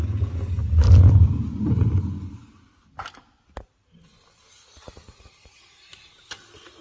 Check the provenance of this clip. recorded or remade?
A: recorded